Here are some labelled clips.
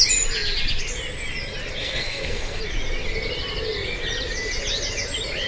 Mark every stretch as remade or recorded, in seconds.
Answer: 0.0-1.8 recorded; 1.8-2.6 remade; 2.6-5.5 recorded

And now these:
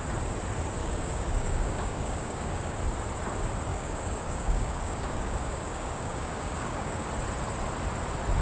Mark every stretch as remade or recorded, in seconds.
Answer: 0.0-0.8 recorded; 0.8-2.8 remade; 2.8-3.7 recorded; 3.7-7.1 remade; 7.1-8.4 recorded